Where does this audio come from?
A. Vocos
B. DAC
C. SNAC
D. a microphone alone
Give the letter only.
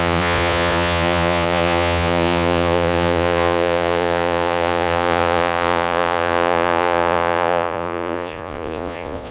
A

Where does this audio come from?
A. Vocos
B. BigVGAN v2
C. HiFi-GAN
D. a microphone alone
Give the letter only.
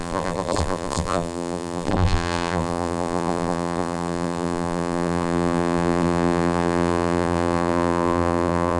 B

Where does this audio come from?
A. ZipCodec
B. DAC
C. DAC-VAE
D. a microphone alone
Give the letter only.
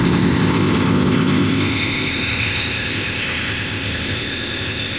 A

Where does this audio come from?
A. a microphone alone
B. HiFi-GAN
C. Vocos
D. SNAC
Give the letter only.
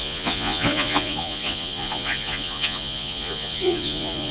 C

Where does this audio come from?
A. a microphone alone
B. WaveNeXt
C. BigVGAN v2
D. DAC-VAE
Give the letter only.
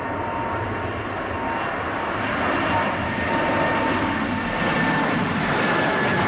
A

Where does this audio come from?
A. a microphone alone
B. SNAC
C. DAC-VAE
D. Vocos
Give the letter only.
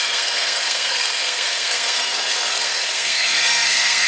B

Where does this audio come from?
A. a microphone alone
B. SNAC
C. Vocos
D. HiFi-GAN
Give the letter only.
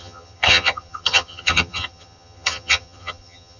D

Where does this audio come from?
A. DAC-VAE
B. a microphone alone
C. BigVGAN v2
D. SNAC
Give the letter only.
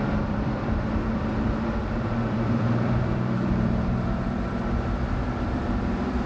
C